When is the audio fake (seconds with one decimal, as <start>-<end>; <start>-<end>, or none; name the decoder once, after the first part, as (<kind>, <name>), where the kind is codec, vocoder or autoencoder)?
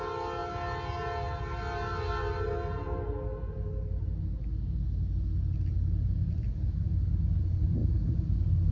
none